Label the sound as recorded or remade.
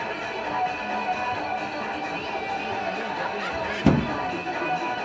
recorded